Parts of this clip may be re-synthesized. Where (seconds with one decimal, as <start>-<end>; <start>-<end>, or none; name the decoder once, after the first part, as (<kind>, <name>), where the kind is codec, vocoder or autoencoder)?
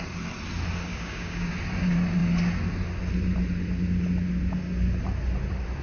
0.9-1.5 (codec, DAC)